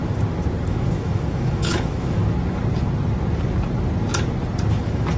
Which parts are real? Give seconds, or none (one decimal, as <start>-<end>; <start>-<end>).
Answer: 0.0-0.7; 2.2-4.7